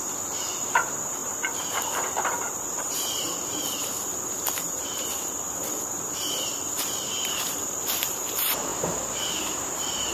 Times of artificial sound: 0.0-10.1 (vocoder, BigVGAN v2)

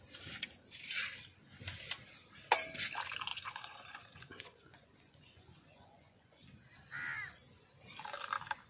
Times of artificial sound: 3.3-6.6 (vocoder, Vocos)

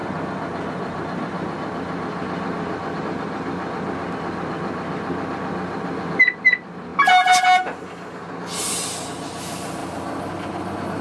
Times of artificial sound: none

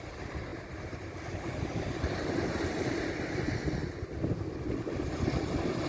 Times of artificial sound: 0.5-2.3 (vocoder, BigVGAN v2)

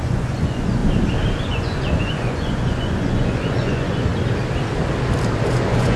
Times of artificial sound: 0.0-0.8 (vocoder, Vocos); 1.4-4.1; 5.5-6.0